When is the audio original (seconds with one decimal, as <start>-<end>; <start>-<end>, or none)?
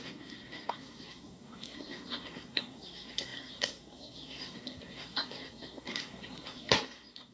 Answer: none